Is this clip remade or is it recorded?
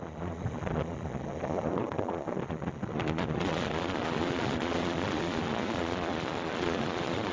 remade